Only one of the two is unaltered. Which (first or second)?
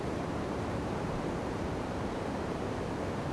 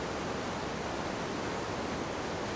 second